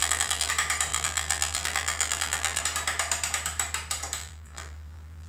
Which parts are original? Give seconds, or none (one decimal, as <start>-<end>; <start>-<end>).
0.5-0.9; 2.6-4.2